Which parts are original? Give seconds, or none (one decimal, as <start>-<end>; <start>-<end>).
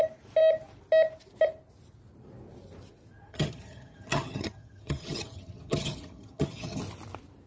0.0-3.3; 6.8-7.5